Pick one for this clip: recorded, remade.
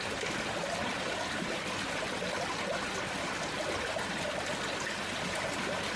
recorded